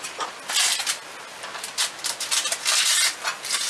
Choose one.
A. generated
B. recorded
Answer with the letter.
B